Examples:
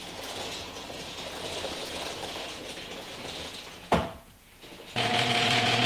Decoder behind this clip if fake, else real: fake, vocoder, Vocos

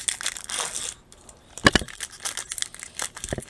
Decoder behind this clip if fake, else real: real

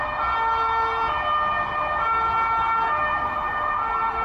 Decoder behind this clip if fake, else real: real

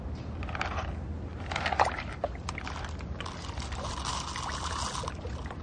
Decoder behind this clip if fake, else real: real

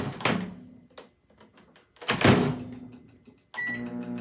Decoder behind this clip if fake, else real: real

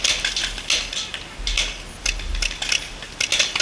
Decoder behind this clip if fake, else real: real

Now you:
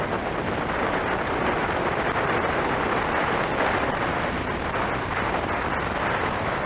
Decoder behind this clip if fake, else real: real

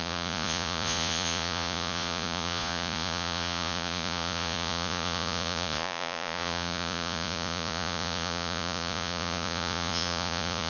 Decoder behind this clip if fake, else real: fake, vocoder, Vocos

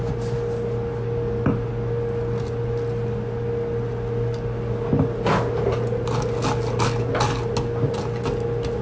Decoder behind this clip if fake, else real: real